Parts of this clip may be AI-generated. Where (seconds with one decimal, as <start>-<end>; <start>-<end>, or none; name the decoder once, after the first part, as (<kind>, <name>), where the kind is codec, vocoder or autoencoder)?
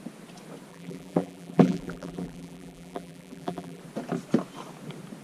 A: 0.7-3.8 (vocoder, BigVGAN v2)